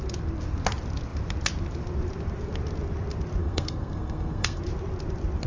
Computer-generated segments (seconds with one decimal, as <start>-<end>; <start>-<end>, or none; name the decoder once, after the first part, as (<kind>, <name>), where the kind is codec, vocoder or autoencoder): 3.4-4.6 (codec, SNAC)